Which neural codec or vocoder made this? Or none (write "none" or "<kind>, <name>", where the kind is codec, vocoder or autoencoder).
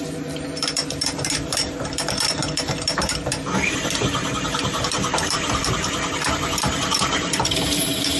vocoder, BigVGAN v2